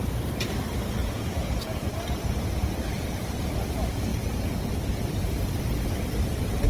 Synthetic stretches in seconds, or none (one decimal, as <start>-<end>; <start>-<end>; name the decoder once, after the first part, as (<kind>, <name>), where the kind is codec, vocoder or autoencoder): 1.0-1.9 (vocoder, Vocos)